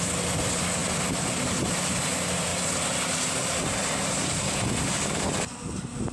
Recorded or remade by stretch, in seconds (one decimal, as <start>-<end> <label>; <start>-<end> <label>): 0.0-6.1 recorded